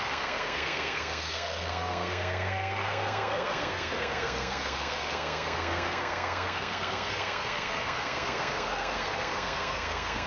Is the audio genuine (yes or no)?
no